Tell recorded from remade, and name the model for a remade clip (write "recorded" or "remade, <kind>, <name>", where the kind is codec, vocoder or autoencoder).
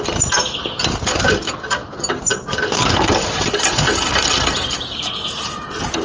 recorded